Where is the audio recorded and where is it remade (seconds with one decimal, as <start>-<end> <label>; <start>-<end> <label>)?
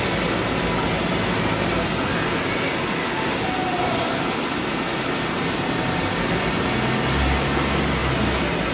0.0-8.7 recorded